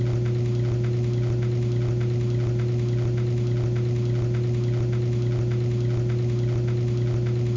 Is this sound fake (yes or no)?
no